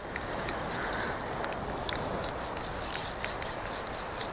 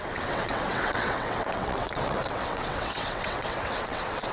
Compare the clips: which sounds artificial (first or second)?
second